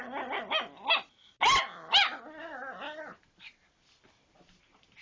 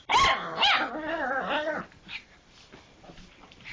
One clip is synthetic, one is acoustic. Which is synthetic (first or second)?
second